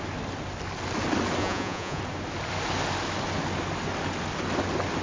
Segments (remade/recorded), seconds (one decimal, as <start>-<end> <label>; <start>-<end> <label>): 0.0-1.4 recorded; 1.4-2.0 remade; 2.0-5.0 recorded

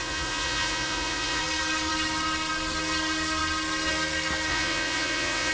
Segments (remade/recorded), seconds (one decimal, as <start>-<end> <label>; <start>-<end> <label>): 0.0-1.4 remade; 1.4-4.5 recorded; 4.5-5.5 remade

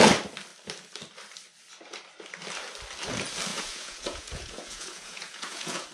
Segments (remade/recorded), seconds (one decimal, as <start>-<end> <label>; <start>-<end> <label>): 0.0-3.5 recorded; 3.5-5.9 remade

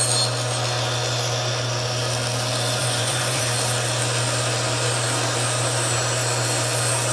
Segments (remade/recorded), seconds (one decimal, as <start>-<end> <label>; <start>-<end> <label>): 0.0-2.8 recorded; 2.8-3.4 remade; 3.4-7.1 recorded